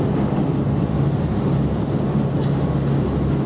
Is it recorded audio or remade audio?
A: recorded